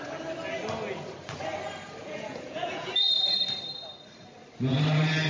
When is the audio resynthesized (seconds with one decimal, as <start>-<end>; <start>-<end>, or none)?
2.0-2.9

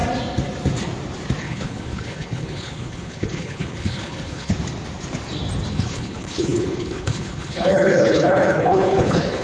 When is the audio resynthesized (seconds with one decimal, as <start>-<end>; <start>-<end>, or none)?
1.4-4.5; 5.7-9.4

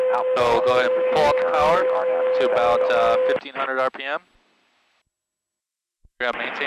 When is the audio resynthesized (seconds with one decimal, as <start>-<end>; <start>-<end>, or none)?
0.0-2.5; 5.6-6.7